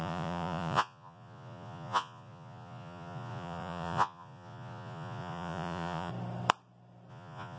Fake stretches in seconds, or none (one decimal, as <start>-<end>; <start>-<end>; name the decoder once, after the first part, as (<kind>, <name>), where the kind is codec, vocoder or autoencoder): 0.0-6.1 (vocoder, Vocos); 7.1-7.6